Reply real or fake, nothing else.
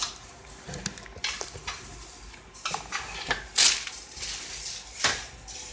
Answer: real